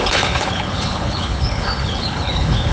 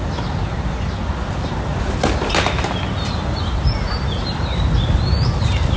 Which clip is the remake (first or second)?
first